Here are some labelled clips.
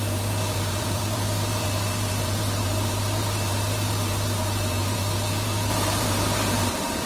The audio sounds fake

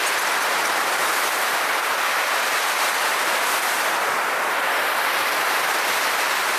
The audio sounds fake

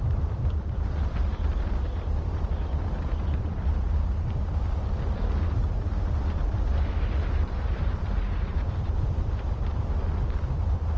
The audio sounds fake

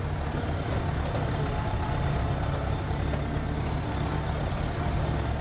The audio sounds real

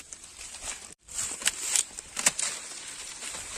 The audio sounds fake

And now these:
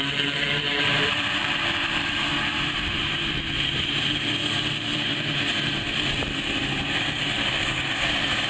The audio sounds fake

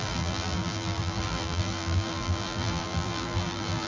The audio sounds fake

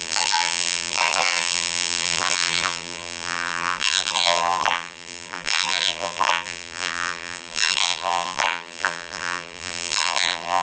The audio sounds fake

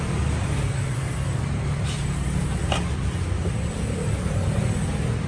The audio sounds real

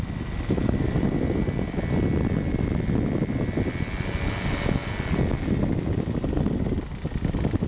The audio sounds real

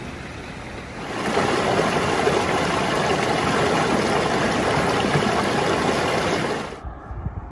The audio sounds real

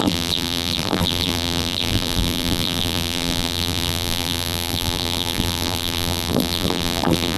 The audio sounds fake